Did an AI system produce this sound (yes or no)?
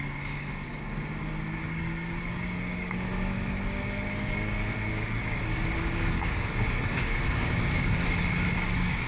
yes